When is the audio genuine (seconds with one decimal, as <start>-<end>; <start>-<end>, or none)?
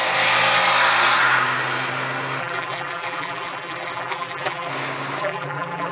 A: 0.0-2.4; 4.7-5.2